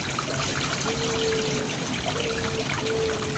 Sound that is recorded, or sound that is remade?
recorded